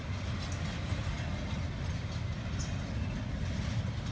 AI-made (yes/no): no